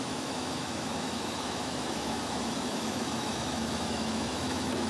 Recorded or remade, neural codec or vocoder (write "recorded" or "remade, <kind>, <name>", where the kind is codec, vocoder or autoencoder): remade, autoencoder, DAC-VAE